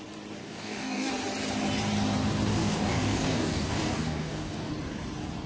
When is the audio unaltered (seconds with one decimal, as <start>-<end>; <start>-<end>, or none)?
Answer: 0.0-0.4; 1.1-2.5; 4.7-5.5